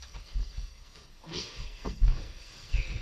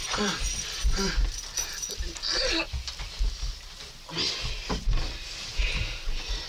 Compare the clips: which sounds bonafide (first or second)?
second